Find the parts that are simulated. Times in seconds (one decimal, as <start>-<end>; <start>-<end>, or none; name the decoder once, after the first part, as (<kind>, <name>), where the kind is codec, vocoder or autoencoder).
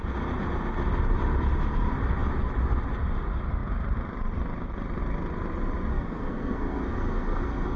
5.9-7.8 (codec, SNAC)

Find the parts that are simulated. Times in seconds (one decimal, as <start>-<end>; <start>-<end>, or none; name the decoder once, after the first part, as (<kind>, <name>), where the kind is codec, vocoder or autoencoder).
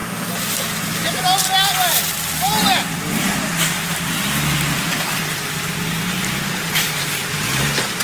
0.0-0.9 (vocoder, BigVGAN v2); 2.5-8.0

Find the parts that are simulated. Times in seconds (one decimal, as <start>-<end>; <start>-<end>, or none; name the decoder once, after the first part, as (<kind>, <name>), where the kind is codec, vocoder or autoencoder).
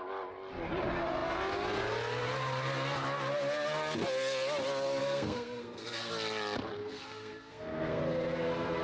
5.0-6.1 (codec, SNAC); 6.8-8.0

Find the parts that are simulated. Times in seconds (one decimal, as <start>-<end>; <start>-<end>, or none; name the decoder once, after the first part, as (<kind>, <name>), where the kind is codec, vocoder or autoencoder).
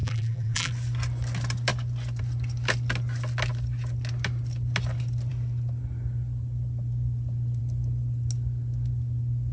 0.0-0.7 (vocoder, BigVGAN v2)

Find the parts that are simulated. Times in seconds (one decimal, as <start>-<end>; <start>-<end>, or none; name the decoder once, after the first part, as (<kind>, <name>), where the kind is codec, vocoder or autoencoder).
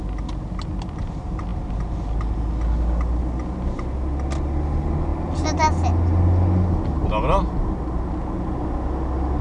none